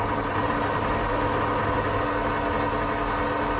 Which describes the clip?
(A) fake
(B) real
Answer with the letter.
B